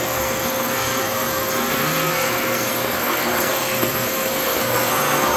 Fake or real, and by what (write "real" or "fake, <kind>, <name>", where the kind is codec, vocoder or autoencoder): fake, codec, SNAC